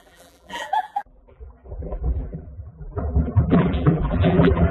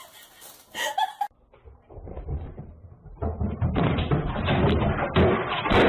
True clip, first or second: second